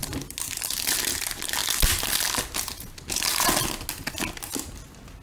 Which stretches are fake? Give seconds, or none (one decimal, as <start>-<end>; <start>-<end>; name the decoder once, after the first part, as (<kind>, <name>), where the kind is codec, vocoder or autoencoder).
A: none